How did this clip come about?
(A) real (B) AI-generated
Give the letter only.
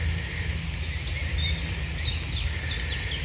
A